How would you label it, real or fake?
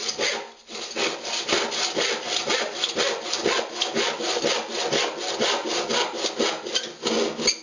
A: real